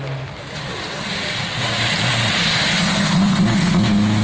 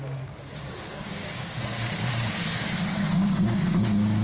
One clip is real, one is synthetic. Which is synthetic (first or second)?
second